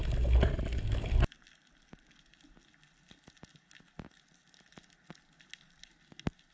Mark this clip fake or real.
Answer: real